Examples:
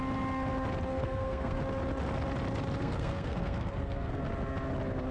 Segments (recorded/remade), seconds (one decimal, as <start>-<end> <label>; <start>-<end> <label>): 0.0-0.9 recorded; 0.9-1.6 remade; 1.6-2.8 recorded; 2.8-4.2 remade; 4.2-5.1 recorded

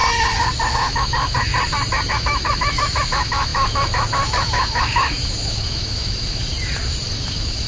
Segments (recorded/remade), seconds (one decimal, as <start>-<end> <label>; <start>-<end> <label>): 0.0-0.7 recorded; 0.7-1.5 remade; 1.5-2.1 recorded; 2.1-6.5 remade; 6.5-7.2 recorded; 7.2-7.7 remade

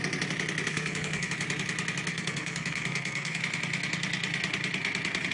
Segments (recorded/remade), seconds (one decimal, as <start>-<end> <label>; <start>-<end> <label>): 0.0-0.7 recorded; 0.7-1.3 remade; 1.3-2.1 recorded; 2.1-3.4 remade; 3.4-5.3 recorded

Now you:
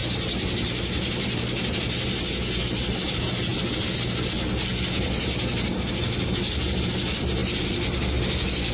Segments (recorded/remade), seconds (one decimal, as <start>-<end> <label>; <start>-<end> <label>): 0.0-1.1 remade; 1.1-8.7 recorded